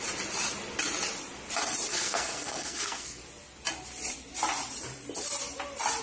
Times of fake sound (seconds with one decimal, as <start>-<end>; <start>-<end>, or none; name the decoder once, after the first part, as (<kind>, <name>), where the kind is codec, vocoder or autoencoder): 1.9-3.2 (codec, SNAC)